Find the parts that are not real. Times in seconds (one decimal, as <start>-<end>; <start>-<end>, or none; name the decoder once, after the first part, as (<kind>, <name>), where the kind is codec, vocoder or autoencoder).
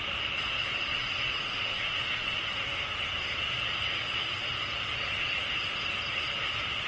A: 0.9-2.4 (vocoder, Vocos)